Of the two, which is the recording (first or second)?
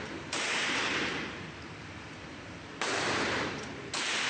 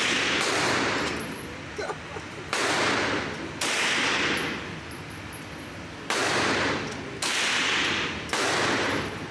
second